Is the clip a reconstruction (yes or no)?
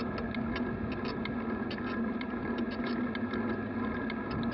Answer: no